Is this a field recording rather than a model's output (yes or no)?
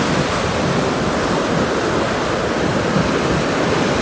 yes